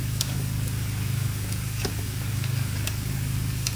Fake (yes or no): yes